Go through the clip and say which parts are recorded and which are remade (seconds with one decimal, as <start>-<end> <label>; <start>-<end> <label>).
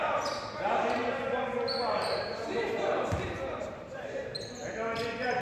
0.0-1.0 remade; 1.0-1.9 recorded; 1.9-2.9 remade; 2.9-3.6 recorded; 3.6-4.3 remade; 4.3-5.4 recorded